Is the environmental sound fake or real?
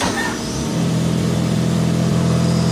fake